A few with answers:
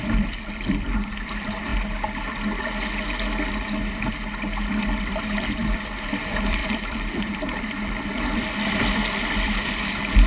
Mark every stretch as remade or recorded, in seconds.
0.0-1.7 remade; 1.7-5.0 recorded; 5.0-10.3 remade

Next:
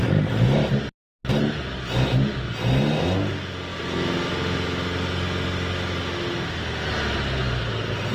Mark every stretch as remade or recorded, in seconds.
0.0-8.1 recorded

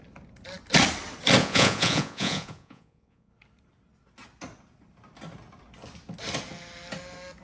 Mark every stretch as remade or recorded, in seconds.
0.0-1.4 recorded; 1.4-3.3 remade; 3.3-7.4 recorded

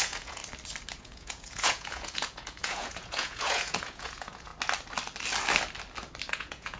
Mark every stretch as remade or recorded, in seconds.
0.0-0.4 remade; 0.4-1.0 recorded; 1.0-4.5 remade; 4.5-6.3 recorded; 6.3-6.8 remade

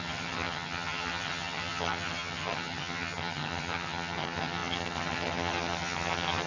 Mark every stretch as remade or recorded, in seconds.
0.0-6.5 remade